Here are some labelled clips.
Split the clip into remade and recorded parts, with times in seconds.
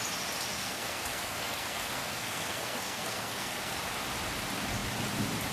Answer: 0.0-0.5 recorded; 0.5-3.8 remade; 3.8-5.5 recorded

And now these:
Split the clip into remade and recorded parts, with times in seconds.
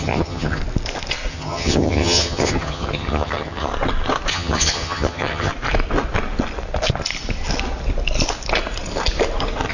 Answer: 0.0-0.6 remade; 0.6-1.3 recorded; 1.3-3.7 remade; 3.7-4.3 recorded; 4.3-5.5 remade; 5.5-9.7 recorded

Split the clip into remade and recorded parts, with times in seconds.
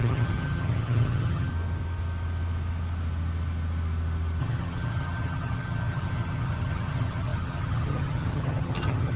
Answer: 0.0-1.5 remade; 1.5-4.4 recorded; 4.4-9.2 remade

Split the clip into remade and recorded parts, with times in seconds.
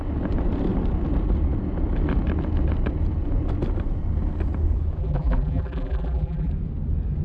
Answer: 0.0-5.0 recorded; 5.0-6.5 remade; 6.5-7.2 recorded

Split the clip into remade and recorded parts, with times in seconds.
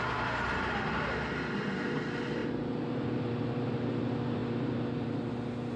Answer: 0.0-2.4 recorded; 2.4-4.0 remade; 4.0-4.4 recorded; 4.4-5.3 remade; 5.3-5.8 recorded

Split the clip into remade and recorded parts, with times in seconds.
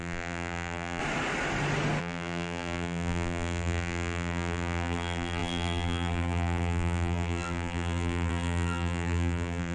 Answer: 0.0-1.0 remade; 1.0-2.0 recorded; 2.0-9.7 remade